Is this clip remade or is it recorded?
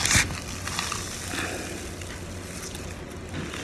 recorded